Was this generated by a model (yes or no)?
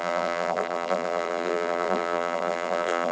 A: yes